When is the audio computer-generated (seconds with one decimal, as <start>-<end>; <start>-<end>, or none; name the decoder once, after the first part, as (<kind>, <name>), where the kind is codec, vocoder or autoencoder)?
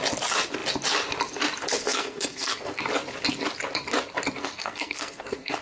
1.8-2.8 (codec, SNAC); 4.4-5.6